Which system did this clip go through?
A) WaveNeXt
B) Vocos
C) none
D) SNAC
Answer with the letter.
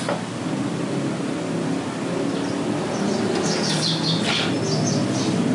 C